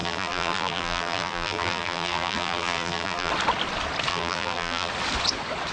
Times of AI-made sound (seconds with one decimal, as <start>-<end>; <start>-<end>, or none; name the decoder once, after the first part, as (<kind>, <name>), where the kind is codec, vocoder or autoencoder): 0.0-3.3 (vocoder, BigVGAN v2); 4.1-4.9